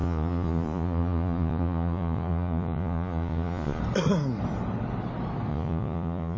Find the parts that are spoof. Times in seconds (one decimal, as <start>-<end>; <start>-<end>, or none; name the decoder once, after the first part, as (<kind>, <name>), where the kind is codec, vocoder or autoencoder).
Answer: 0.0-3.8 (vocoder, Vocos); 5.5-6.4